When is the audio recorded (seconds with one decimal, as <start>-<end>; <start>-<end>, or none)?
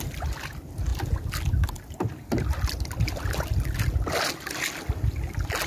0.0-5.7